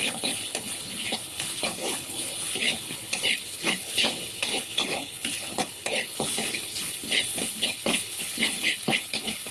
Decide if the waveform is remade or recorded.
remade